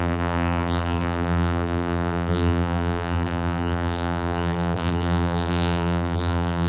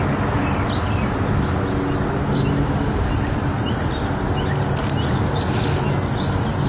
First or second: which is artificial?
first